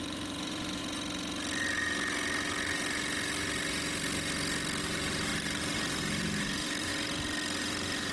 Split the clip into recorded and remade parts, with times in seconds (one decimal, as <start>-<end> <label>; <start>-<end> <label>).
0.0-0.8 remade; 0.8-4.8 recorded; 4.8-6.9 remade; 6.9-7.6 recorded; 7.6-8.1 remade